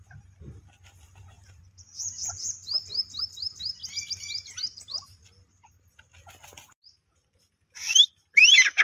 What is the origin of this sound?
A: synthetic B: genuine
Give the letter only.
B